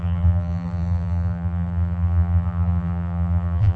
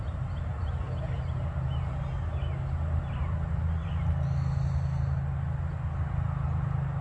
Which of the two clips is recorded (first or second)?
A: second